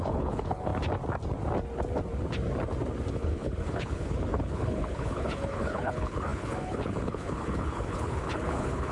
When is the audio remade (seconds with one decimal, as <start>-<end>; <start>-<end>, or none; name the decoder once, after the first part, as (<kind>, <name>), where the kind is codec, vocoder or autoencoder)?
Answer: 0.0-0.7 (codec, HILCodec); 3.1-8.9